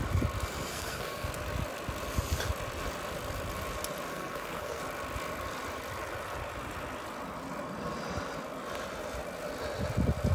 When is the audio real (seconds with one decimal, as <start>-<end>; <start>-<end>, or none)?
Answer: 0.0-0.7; 1.3-4.1; 4.8-10.3